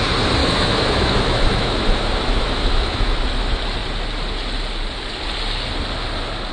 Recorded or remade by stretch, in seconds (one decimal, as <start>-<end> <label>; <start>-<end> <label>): 0.0-0.4 recorded; 0.4-3.2 remade; 3.2-6.5 recorded